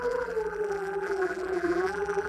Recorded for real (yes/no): no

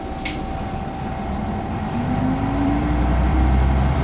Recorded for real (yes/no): no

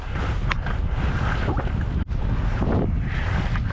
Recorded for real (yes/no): yes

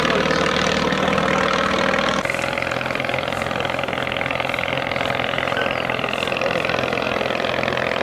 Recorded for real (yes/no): yes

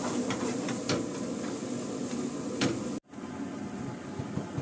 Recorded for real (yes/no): yes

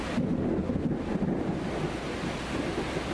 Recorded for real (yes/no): yes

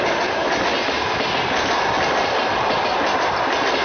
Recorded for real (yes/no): yes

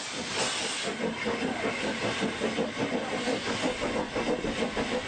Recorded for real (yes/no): yes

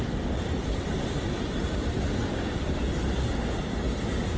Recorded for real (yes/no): no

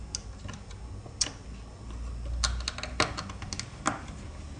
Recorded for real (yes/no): yes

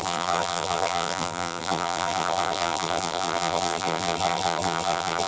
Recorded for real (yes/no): no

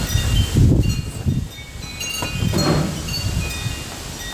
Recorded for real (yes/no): yes